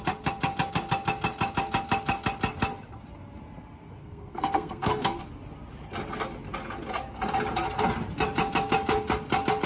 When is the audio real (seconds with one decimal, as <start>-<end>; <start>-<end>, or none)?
0.0-4.0; 5.2-9.7